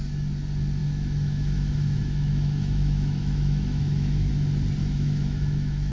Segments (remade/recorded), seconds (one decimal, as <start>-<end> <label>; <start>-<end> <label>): 0.0-0.8 recorded; 0.8-4.3 remade; 4.3-4.8 recorded; 4.8-5.9 remade